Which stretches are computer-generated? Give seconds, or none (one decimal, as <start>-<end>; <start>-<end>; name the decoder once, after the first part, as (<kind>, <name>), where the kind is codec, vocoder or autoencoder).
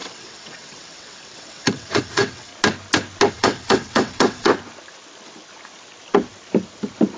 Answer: 0.0-2.5 (vocoder, WaveNeXt); 3.3-4.5